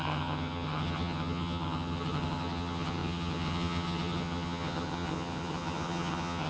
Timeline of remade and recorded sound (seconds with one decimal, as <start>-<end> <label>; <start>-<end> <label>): 0.0-6.5 remade